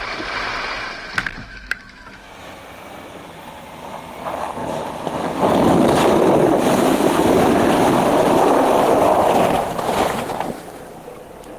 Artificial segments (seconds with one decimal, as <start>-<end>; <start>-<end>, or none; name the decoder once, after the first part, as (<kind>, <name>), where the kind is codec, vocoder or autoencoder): 1.4-2.3 (autoencoder, DAC-VAE)